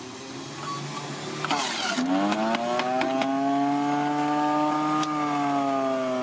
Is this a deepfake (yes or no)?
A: no